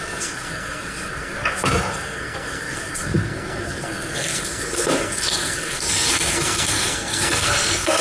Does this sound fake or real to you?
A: fake